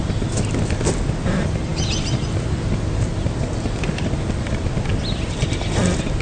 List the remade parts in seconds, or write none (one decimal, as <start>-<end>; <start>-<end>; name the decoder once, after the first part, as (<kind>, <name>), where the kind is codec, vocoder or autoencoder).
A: none